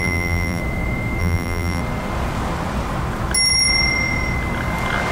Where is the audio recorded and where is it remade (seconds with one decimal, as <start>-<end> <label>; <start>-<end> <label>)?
0.0-0.6 remade; 0.6-1.2 recorded; 1.2-1.8 remade; 1.8-5.1 recorded